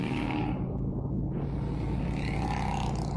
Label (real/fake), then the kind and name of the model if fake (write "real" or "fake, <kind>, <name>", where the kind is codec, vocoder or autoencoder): real